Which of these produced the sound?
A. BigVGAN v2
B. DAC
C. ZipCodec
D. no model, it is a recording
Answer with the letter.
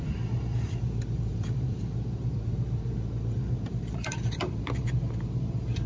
A